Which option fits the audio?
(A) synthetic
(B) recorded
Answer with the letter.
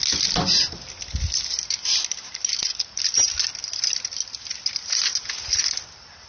B